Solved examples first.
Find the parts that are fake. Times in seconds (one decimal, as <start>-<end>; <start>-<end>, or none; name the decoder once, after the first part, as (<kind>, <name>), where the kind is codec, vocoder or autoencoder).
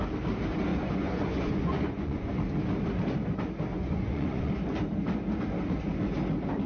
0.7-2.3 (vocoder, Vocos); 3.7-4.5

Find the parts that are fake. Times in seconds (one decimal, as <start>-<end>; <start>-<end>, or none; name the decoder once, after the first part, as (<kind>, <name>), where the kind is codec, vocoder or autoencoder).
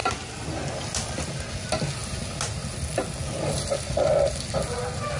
none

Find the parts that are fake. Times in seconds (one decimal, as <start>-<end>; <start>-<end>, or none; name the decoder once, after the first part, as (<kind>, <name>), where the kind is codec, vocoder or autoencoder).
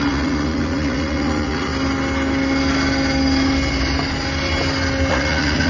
0.0-1.7 (vocoder, Vocos); 5.1-5.7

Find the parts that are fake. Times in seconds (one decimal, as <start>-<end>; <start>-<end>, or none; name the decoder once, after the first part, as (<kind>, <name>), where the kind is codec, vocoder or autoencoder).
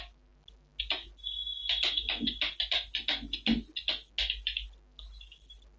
none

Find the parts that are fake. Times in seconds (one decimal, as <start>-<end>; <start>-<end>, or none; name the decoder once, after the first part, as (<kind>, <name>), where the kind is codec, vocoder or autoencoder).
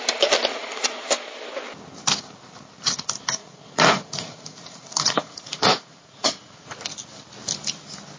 0.5-1.1 (vocoder, Vocos); 3.4-6.7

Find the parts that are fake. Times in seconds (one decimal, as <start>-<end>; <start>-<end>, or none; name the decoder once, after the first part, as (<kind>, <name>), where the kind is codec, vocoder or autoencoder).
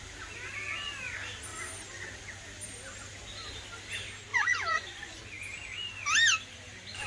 4.3-5.2 (vocoder, Vocos)